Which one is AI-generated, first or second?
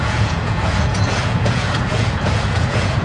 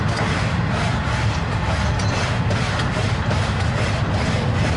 first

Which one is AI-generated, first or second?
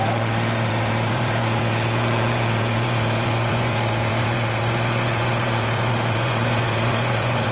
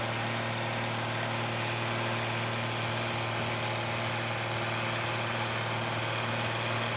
first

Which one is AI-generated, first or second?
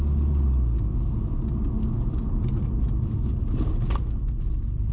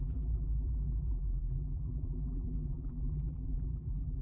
second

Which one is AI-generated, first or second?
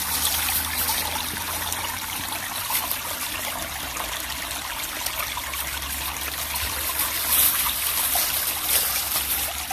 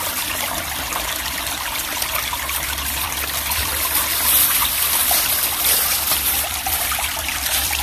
second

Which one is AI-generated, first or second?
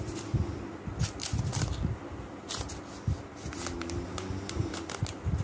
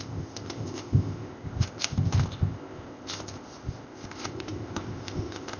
second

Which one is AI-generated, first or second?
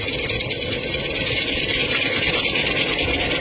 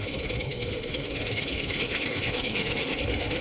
second